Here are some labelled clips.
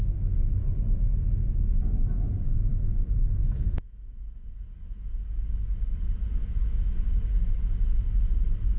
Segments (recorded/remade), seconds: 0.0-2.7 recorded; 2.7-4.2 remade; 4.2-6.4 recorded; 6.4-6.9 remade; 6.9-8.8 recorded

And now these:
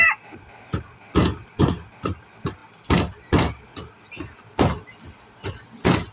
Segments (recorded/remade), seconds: 0.0-6.1 recorded

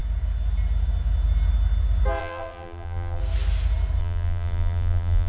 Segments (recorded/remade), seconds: 0.0-2.2 recorded; 2.2-3.2 remade; 3.2-4.0 recorded; 4.0-5.3 remade

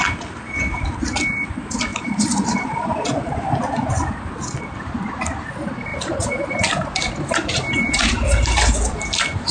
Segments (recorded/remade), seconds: 0.0-1.9 recorded; 1.9-2.9 remade; 2.9-5.9 recorded; 5.9-9.5 remade

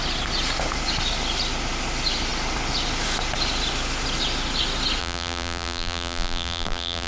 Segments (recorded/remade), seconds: 0.0-5.0 recorded; 5.0-7.1 remade

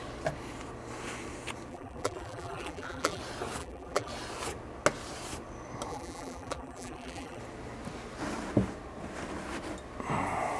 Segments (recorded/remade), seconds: 0.0-1.7 recorded; 1.7-3.2 remade; 3.2-3.6 recorded; 3.6-4.1 remade; 4.1-5.9 recorded; 5.9-7.4 remade; 7.4-10.6 recorded